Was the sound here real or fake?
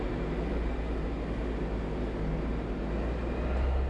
real